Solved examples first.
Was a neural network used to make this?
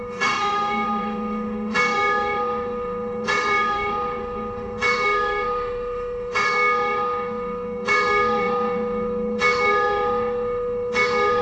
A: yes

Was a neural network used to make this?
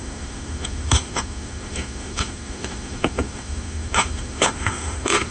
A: yes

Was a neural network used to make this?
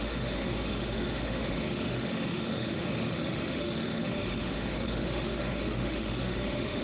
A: yes